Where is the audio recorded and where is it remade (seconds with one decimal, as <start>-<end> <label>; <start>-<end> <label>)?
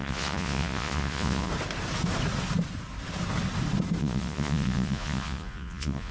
0.0-1.5 remade; 1.5-4.0 recorded; 4.0-6.1 remade